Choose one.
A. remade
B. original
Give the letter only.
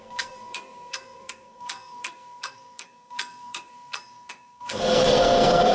A